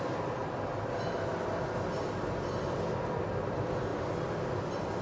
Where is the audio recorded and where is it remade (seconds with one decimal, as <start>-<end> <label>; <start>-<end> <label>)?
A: 0.0-0.4 remade; 0.4-3.4 recorded; 3.4-5.0 remade